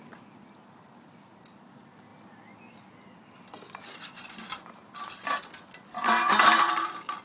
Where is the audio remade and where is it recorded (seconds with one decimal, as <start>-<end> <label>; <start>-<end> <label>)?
0.0-7.2 recorded